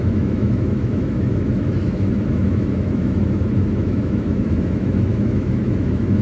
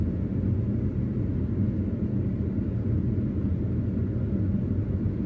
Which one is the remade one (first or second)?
first